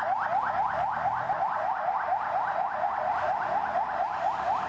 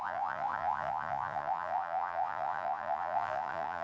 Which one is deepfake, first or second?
second